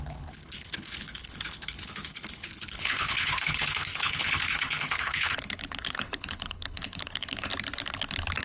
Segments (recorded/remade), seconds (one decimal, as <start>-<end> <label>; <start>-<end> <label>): 0.0-7.5 remade; 7.5-8.4 recorded